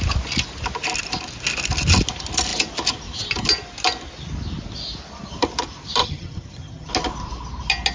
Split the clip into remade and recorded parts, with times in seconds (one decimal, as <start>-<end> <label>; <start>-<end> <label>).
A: 0.0-6.0 recorded; 6.0-6.9 remade; 6.9-7.9 recorded